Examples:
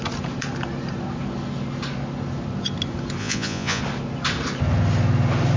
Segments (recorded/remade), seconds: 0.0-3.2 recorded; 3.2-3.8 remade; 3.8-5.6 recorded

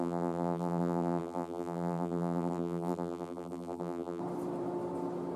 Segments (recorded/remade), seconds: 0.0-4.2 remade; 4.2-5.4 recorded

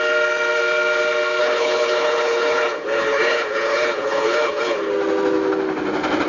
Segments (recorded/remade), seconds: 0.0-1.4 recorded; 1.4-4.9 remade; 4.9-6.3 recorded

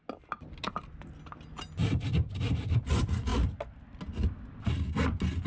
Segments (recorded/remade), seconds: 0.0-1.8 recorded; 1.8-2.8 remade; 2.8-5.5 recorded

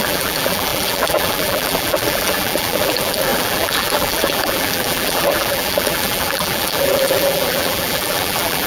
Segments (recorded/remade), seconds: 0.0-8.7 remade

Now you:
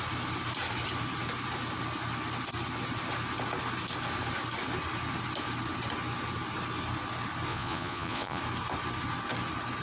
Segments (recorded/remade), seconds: 0.0-7.5 recorded; 7.5-8.4 remade; 8.4-9.8 recorded

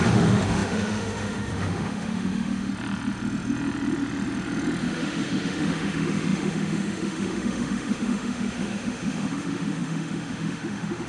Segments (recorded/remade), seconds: 0.0-2.7 remade; 2.7-4.8 recorded; 4.8-11.1 remade

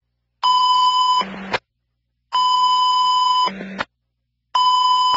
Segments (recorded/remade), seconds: 0.0-5.2 recorded